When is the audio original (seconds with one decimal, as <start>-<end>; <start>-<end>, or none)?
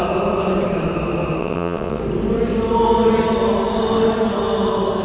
0.0-1.4; 2.0-5.0